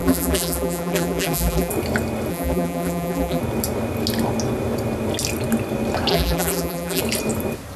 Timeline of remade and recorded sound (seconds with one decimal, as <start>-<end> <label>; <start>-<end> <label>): 0.0-1.7 remade; 1.7-2.3 recorded; 2.3-3.4 remade; 3.4-6.1 recorded; 6.1-7.0 remade; 7.0-7.8 recorded